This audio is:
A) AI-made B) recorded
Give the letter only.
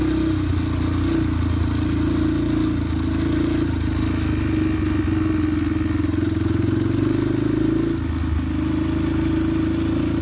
B